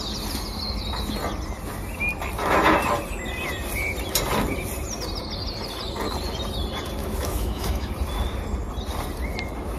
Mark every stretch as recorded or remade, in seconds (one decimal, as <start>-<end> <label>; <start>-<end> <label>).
0.0-7.0 recorded; 7.0-7.9 remade; 7.9-9.8 recorded